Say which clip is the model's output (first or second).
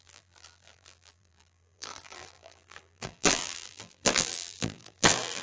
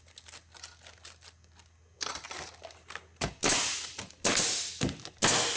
first